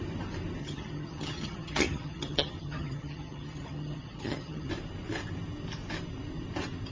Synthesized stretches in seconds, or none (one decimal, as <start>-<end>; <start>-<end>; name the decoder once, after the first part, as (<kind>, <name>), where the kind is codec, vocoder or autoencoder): 0.6-4.7 (vocoder, HiFi-GAN)